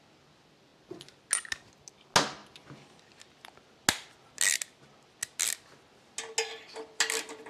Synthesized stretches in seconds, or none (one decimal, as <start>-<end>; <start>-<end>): none